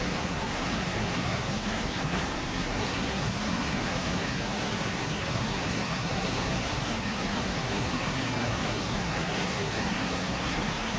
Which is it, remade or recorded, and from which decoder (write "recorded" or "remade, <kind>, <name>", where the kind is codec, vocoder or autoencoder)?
remade, codec, SNAC